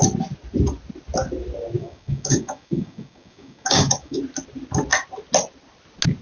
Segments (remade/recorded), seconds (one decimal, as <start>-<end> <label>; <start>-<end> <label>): 0.0-1.8 recorded; 1.8-4.2 remade; 4.2-6.2 recorded